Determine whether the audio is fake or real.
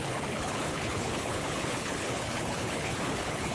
fake